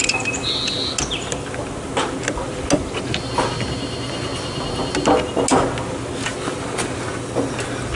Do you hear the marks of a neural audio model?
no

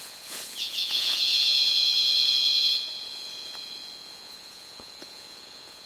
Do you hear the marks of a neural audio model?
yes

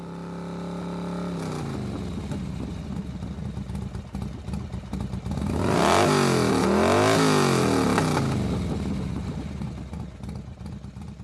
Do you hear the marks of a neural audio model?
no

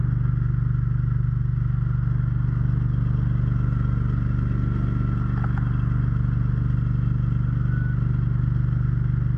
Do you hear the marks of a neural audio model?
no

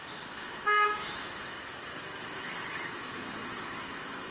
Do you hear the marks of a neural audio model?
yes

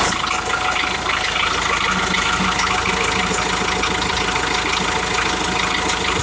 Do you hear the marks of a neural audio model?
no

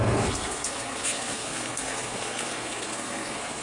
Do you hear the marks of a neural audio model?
yes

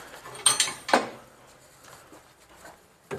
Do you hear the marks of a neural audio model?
no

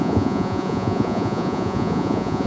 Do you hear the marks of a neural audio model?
yes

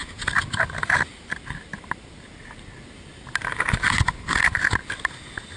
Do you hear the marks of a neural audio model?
no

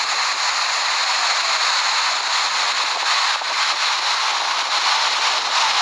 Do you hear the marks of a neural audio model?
no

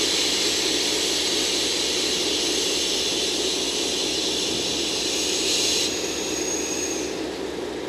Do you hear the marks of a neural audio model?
no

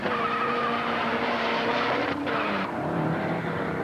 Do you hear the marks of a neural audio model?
yes